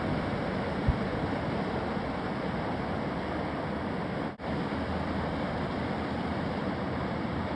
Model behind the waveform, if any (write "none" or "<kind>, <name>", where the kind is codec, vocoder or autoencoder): none